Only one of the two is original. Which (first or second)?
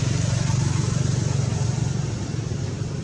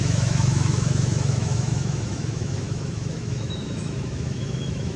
first